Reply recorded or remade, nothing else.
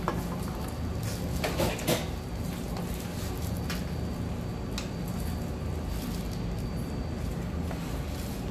recorded